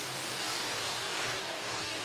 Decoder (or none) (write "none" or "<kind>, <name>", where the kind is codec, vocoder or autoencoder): codec, DAC